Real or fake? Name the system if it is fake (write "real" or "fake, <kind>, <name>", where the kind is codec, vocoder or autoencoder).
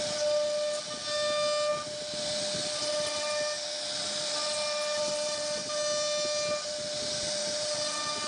real